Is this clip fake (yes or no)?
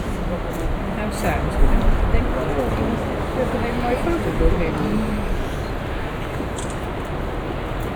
no